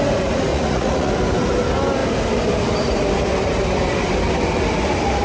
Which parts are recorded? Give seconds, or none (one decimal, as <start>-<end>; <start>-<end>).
0.0-0.5; 1.1-5.2